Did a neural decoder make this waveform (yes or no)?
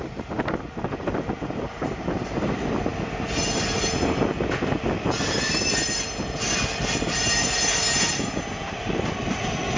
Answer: no